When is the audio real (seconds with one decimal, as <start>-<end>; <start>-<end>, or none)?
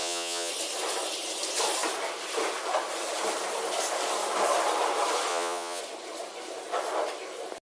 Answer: 0.5-5.3; 5.8-7.7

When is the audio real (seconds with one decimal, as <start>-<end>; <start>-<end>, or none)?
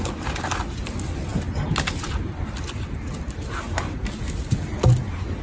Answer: 0.0-5.4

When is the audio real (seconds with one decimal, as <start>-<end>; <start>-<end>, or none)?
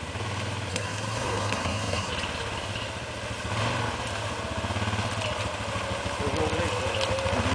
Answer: 0.0-0.7; 2.1-7.5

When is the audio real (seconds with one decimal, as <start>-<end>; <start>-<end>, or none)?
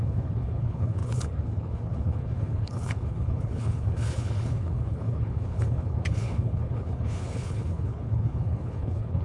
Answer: none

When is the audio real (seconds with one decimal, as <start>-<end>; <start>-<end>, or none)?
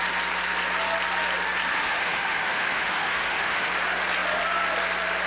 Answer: 0.0-1.7; 3.7-5.3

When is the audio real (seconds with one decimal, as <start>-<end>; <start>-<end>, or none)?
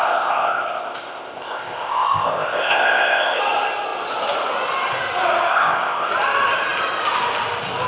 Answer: 3.4-5.5; 6.1-7.9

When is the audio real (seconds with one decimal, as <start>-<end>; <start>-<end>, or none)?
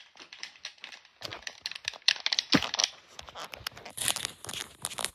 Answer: 0.0-5.1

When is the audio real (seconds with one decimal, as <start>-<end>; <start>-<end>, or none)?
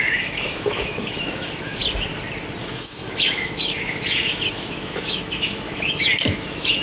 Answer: 1.8-2.6